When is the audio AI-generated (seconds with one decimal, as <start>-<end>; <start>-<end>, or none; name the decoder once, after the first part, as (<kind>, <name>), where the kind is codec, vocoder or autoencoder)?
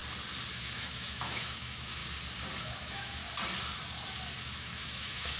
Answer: 0.5-2.0 (autoencoder, DAC-VAE); 2.6-3.2; 4.4-5.4